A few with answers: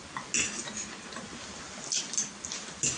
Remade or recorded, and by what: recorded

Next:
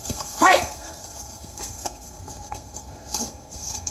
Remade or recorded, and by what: remade, codec, SNAC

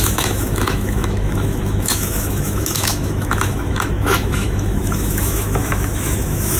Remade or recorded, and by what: remade, autoencoder, DAC-VAE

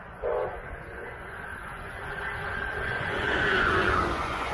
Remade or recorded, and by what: remade, vocoder, Vocos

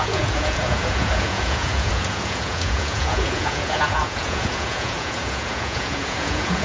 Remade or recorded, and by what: remade, vocoder, Vocos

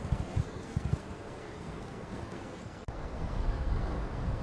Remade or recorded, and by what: remade, codec, SNAC